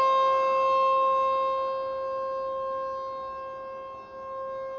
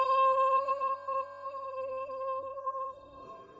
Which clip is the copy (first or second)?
second